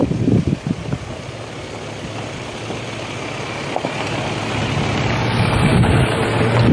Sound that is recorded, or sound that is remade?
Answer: recorded